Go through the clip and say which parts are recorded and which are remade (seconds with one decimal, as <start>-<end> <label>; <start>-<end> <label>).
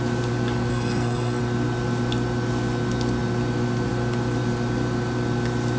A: 0.0-0.7 recorded; 0.7-1.4 remade; 1.4-5.8 recorded